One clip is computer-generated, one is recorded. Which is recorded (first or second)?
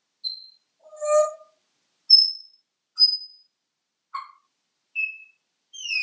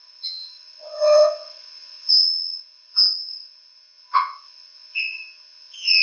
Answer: first